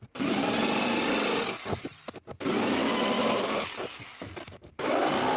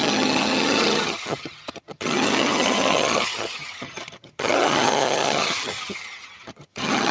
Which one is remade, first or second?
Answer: second